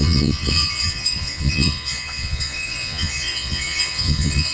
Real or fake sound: fake